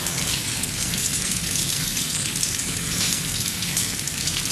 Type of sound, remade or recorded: remade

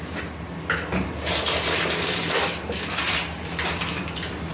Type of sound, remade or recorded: recorded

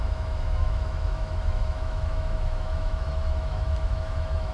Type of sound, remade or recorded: remade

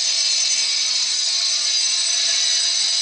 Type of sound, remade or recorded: recorded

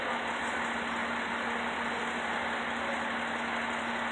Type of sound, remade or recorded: recorded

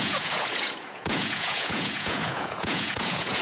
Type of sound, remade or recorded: remade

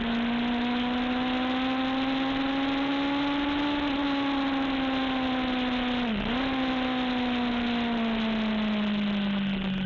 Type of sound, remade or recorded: recorded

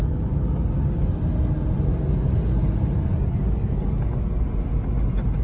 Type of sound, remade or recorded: recorded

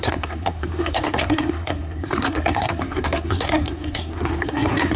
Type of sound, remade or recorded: remade